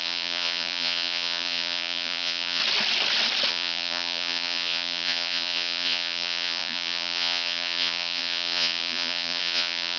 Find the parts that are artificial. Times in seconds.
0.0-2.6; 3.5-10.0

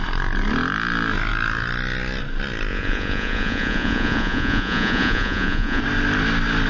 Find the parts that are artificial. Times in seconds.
2.7-5.8

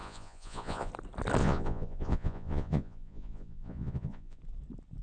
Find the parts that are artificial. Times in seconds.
0.0-0.9; 1.4-4.4

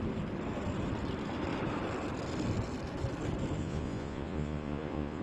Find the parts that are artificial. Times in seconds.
3.6-5.2

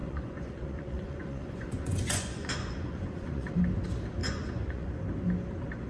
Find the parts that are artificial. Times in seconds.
0.0-3.5; 4.2-4.9